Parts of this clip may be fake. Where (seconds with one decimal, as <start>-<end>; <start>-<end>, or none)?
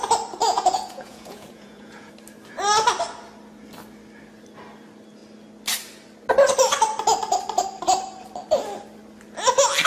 0.4-2.1